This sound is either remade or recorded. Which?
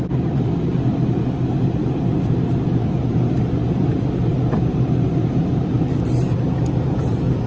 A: remade